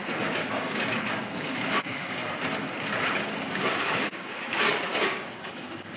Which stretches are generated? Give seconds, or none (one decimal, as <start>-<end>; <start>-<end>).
0.0-2.2; 3.0-6.0